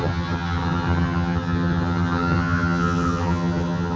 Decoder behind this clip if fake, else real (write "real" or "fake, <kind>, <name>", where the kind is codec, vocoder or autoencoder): fake, vocoder, HiFi-GAN